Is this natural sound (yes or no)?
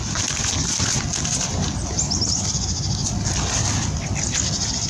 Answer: yes